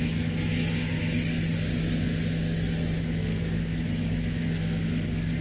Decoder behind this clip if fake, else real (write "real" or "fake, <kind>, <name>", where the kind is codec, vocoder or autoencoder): real